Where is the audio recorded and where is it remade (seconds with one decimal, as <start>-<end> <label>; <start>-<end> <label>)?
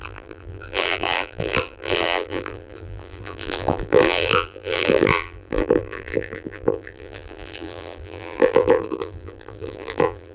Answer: 0.0-10.3 remade